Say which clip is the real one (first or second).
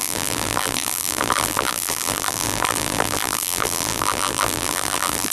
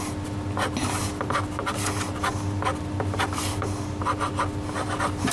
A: second